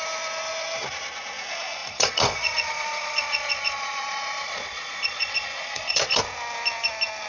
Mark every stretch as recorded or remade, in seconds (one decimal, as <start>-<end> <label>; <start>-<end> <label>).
0.0-1.8 recorded; 1.8-6.2 remade; 6.2-7.3 recorded